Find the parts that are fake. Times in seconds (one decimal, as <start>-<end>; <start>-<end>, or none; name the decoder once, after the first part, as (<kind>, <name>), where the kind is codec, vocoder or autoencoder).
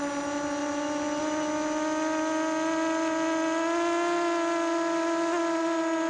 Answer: none